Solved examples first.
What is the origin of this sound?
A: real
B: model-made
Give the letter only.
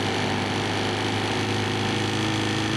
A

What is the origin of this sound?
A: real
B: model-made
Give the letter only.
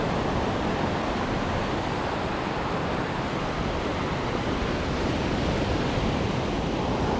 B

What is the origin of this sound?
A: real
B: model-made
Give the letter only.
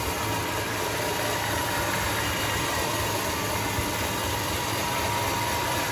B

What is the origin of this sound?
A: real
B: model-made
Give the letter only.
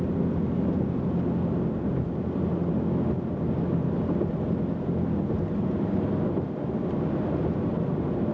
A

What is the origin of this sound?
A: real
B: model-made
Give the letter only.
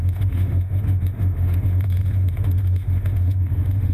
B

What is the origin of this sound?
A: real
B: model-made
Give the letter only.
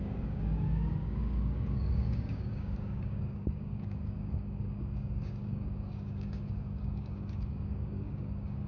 B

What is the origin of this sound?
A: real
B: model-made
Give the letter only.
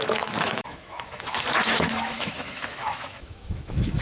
B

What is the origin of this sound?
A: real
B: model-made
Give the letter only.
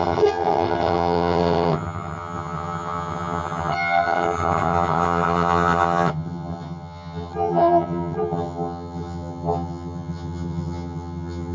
B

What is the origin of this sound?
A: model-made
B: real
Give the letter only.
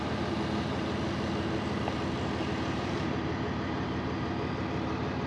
B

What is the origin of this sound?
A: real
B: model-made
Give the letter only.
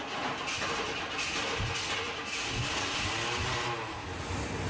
A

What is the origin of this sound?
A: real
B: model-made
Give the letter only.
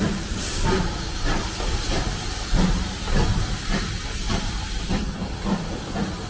A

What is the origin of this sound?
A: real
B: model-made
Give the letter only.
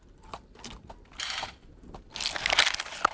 A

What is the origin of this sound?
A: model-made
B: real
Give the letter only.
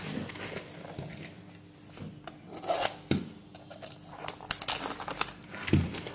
B